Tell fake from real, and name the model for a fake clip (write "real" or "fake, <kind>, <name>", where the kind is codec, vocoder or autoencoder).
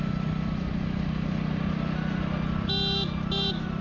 real